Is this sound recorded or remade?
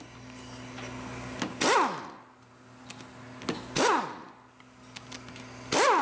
recorded